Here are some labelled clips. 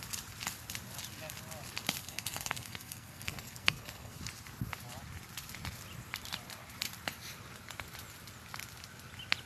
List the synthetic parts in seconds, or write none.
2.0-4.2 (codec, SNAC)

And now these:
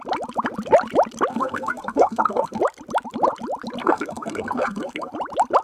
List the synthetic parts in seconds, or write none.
1.3-2.6 (codec, SNAC); 3.8-5.1